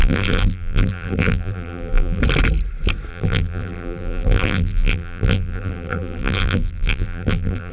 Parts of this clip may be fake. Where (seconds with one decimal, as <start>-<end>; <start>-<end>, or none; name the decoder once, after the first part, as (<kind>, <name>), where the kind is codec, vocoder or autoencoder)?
0.0-2.2 (vocoder, BigVGAN v2); 3.1-7.7